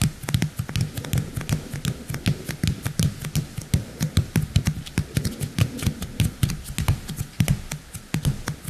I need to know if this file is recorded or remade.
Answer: recorded